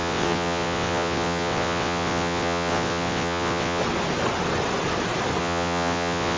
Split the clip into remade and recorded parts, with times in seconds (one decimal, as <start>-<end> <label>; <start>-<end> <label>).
0.0-3.8 remade; 3.8-5.4 recorded; 5.4-6.4 remade